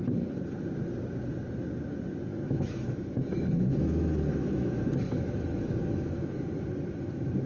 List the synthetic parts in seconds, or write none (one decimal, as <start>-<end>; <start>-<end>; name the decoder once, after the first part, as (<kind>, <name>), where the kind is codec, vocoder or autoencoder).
2.3-6.5 (autoencoder, DAC-VAE)